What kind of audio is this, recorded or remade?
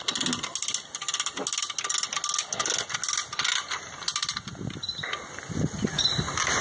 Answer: recorded